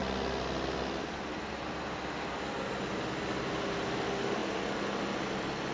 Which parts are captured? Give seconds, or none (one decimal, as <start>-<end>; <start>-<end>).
0.0-5.7

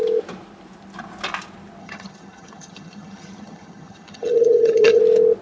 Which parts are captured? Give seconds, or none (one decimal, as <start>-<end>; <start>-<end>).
0.0-1.8; 5.0-5.4

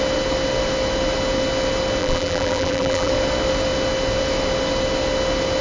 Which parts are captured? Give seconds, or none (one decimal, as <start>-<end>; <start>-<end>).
0.0-2.0; 3.1-5.6

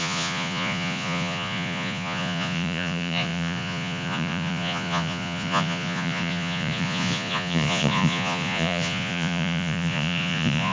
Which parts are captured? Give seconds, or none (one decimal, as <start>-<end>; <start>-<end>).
none

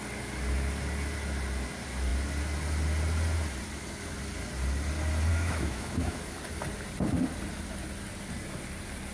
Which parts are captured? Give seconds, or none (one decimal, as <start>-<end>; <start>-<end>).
0.0-5.3; 6.2-9.1

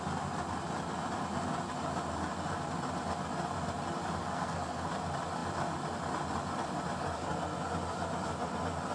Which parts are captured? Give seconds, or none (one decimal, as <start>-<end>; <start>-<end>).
0.0-4.2; 4.9-8.9

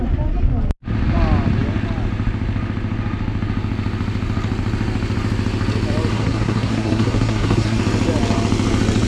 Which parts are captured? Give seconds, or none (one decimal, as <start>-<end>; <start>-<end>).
0.0-6.1; 7.8-9.1